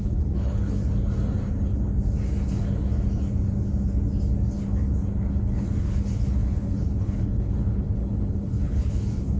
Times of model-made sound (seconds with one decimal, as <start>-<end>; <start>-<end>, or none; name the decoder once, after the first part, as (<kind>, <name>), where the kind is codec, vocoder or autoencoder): 0.0-0.8 (codec, HILCodec); 5.3-9.4